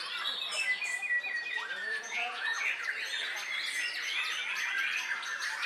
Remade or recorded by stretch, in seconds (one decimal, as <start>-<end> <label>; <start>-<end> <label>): 0.0-1.8 recorded; 1.8-2.6 remade; 2.6-5.7 recorded